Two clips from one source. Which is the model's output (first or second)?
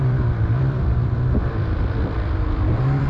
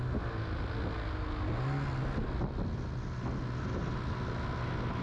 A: first